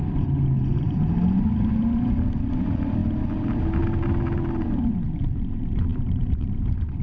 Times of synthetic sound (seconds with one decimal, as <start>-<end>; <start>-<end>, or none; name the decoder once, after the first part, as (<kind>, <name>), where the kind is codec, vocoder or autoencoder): none